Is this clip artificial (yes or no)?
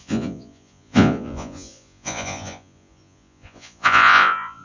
yes